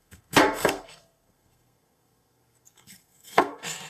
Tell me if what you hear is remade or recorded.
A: remade